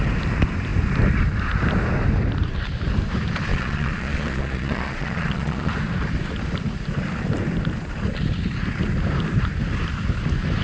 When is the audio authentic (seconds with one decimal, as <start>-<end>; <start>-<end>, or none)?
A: 0.0-3.5; 5.7-10.6